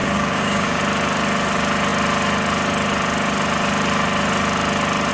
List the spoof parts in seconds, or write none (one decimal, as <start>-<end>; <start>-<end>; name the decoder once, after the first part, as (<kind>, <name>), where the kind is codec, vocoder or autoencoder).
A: 0.0-0.8 (codec, DAC)